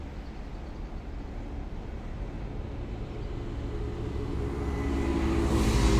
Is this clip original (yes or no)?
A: yes